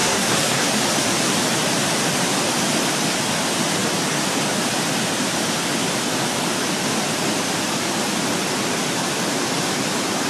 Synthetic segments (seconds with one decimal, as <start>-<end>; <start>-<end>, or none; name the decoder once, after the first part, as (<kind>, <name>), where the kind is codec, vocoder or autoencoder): 0.0-0.7 (codec, SNAC)